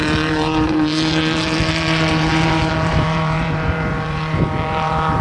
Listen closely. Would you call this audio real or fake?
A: fake